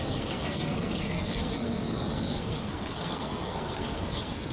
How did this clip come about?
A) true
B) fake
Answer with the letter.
B